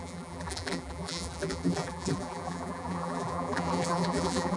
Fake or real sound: fake